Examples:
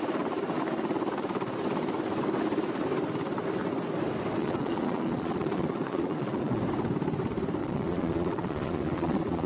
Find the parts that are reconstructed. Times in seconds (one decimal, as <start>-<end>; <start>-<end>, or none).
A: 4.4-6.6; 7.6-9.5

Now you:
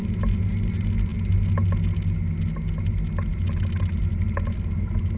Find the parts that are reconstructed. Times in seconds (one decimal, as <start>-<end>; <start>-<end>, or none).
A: none

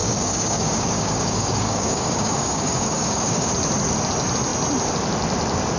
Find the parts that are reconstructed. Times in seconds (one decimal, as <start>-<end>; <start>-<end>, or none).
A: 0.0-3.5

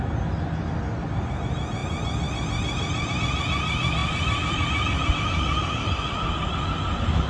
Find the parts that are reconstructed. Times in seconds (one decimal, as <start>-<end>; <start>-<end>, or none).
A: 4.0-5.1

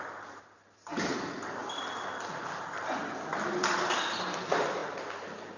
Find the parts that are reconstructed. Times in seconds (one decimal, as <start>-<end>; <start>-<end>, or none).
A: none

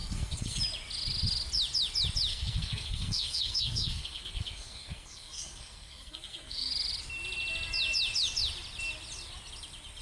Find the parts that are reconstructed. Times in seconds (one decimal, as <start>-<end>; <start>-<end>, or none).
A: 0.0-0.6; 2.3-6.7